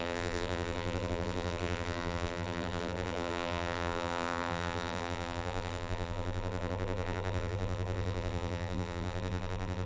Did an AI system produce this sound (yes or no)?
yes